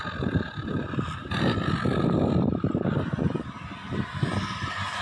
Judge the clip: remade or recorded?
recorded